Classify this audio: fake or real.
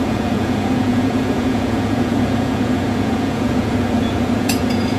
fake